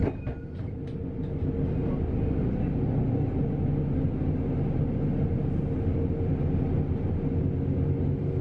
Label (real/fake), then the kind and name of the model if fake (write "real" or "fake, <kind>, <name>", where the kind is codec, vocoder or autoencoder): real